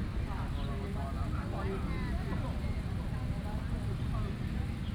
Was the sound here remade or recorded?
recorded